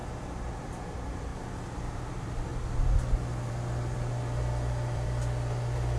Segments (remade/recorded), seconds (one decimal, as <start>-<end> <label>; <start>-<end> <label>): 0.0-0.6 recorded; 0.6-1.3 remade; 1.3-2.1 recorded; 2.1-2.5 remade; 2.5-3.5 recorded; 3.5-6.0 remade

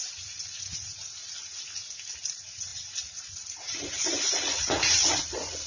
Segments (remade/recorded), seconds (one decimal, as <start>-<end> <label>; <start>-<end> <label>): 0.0-1.2 remade; 1.2-2.3 recorded; 2.3-5.7 remade

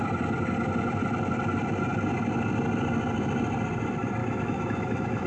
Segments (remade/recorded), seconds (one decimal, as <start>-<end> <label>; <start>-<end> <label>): 0.0-4.2 recorded; 4.2-5.3 remade

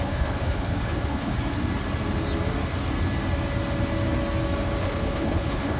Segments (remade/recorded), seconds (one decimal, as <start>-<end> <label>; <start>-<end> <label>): 0.0-1.3 remade; 1.3-4.8 recorded; 4.8-5.8 remade

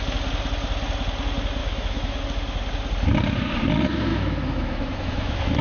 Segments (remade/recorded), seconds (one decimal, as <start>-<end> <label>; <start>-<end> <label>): 0.0-1.6 recorded; 1.6-2.2 remade; 2.2-4.1 recorded; 4.1-5.6 remade

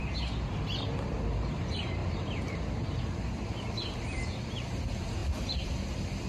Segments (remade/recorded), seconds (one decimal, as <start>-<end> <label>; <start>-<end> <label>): 0.0-6.3 recorded

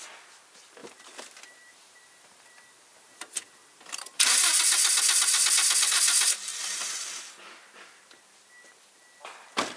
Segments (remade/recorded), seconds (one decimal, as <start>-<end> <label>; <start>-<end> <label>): 0.0-0.8 recorded; 0.8-4.6 remade; 4.6-6.5 recorded; 6.5-7.2 remade; 7.2-9.8 recorded

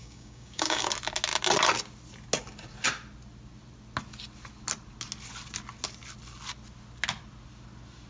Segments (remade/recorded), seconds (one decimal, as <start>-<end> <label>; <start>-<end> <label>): 0.0-0.9 remade; 0.9-8.1 recorded